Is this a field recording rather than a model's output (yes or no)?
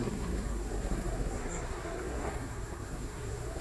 no